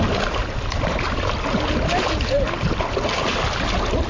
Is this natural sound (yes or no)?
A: yes